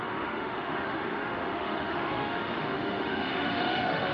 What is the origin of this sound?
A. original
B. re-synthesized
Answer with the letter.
B